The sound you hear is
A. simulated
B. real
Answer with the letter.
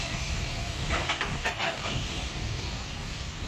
A